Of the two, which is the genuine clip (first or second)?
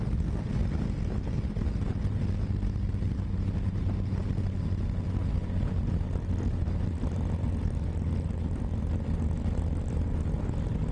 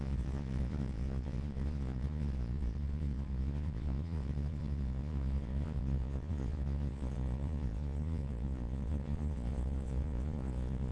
first